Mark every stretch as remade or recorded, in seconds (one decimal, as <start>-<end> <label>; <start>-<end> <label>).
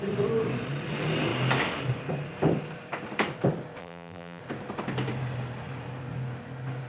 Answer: 0.0-3.8 recorded; 3.8-4.4 remade; 4.4-6.9 recorded